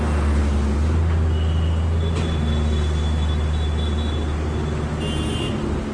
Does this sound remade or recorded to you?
recorded